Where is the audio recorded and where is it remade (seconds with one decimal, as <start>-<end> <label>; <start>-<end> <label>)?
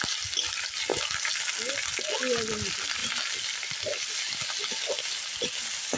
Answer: 0.0-6.0 recorded